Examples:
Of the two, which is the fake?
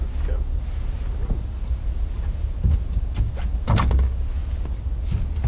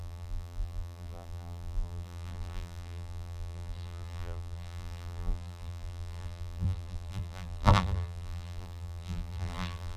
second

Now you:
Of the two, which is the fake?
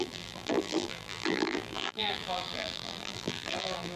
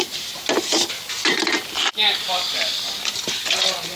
first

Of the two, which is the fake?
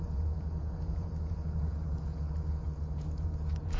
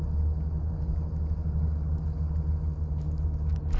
first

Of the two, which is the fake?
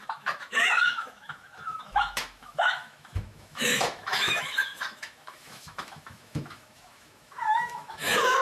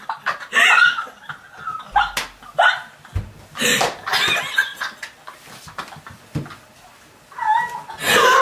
first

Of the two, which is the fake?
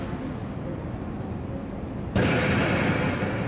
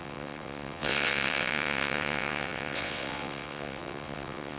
second